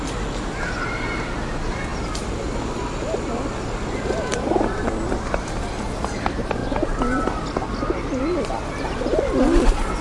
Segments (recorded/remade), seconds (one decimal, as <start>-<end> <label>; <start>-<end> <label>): 0.0-10.0 recorded